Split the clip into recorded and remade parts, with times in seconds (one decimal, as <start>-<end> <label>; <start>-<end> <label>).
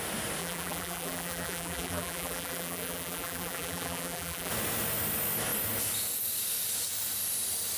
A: 0.0-0.4 recorded; 0.4-4.5 remade; 4.5-7.8 recorded